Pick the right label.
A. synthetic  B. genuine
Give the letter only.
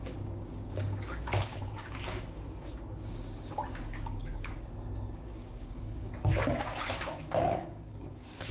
A